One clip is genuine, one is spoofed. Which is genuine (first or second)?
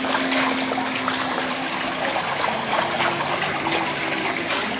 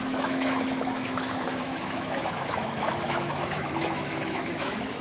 first